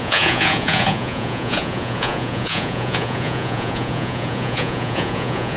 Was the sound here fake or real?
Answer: fake